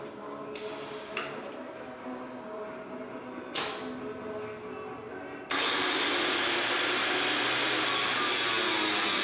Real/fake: real